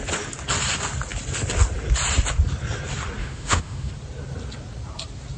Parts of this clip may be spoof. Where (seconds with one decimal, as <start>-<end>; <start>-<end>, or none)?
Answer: 3.2-3.9